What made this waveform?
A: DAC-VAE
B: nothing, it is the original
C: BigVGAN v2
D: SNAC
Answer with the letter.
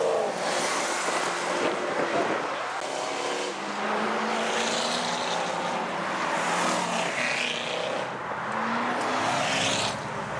B